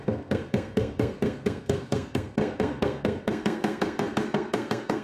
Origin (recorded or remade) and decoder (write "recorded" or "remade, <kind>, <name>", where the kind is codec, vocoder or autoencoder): remade, codec, SNAC